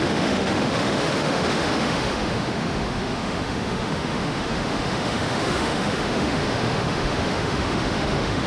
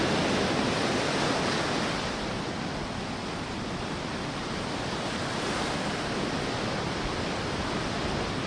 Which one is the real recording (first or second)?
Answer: second